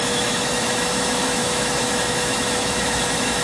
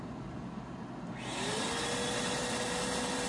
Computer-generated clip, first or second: first